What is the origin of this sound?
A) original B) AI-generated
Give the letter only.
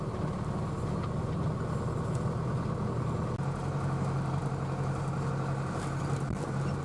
A